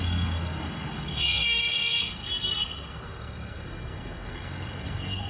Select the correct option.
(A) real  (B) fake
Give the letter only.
B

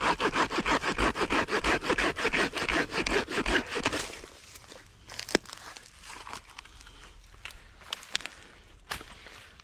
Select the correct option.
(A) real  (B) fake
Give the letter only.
B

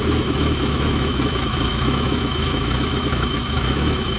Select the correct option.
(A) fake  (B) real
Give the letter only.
A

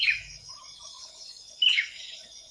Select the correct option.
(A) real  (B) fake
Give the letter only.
B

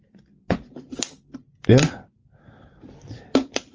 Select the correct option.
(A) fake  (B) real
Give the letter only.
B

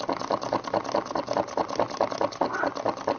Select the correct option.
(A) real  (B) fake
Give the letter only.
A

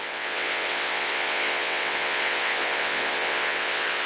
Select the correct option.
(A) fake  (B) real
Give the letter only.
A